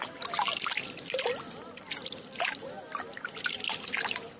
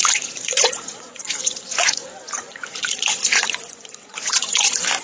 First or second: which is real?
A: first